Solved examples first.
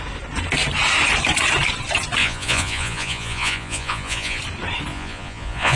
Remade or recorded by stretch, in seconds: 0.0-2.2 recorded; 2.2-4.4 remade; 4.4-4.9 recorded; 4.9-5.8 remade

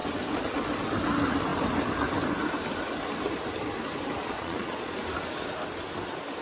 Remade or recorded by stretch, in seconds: 0.0-4.2 recorded; 4.2-4.9 remade; 4.9-6.4 recorded

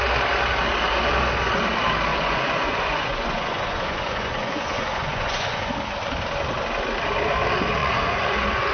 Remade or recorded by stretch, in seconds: 0.0-2.1 recorded; 2.1-5.7 remade; 5.7-7.8 recorded; 7.8-8.7 remade